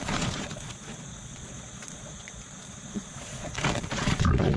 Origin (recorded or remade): remade